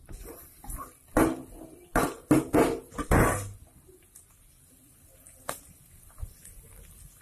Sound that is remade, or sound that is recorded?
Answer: recorded